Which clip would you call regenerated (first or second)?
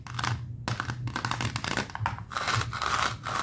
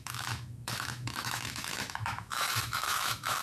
second